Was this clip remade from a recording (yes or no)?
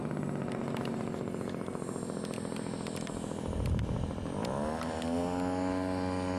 no